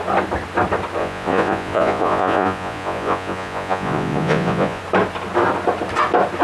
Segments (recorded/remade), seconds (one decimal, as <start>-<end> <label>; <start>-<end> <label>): 0.0-1.0 recorded; 1.0-4.8 remade; 4.8-6.4 recorded